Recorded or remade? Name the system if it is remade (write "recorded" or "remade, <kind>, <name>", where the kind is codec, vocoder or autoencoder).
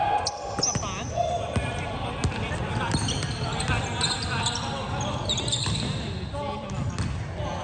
recorded